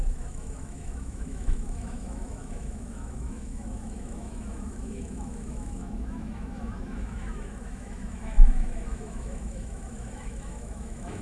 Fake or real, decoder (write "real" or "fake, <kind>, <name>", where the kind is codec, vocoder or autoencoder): fake, autoencoder, DAC-VAE